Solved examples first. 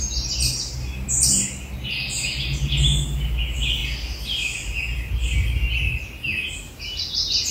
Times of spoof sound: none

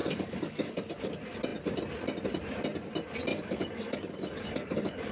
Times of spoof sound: 0.0-0.7 (codec, DAC); 3.3-5.1

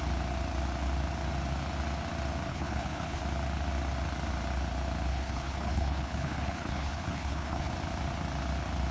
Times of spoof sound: 2.5-3.2 (codec, HILCodec); 5.1-7.7

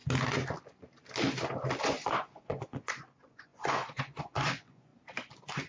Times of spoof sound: 1.8-4.9 (vocoder, Vocos)

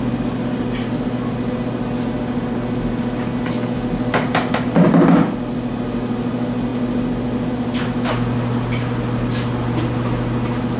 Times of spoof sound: none